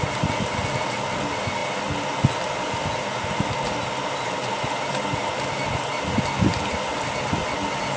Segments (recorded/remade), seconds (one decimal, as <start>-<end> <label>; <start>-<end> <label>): 0.0-8.0 recorded